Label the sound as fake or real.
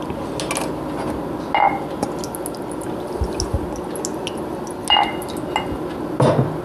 real